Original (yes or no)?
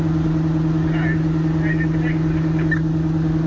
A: yes